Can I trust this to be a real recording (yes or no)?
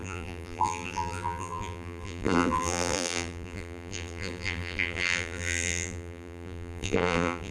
no